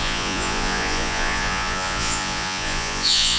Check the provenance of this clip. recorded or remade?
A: remade